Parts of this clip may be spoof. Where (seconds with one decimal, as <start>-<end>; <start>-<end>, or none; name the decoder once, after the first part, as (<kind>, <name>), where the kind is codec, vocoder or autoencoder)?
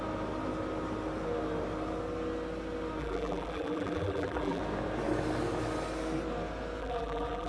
3.0-4.6 (vocoder, BigVGAN v2); 6.8-7.5